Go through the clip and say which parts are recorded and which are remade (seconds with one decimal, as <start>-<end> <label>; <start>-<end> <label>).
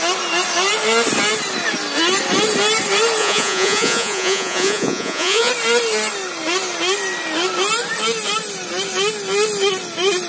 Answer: 0.0-3.2 recorded; 3.2-5.5 remade; 5.5-10.3 recorded